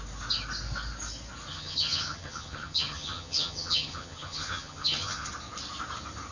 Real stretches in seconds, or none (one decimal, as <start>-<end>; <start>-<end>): 0.0-1.5; 5.3-6.3